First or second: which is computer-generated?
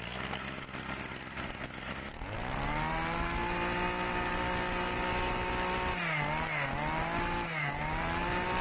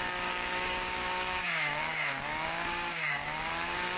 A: second